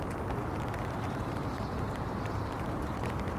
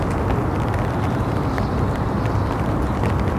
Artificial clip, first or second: first